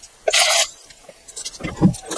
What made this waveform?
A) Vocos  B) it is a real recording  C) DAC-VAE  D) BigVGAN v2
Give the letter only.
B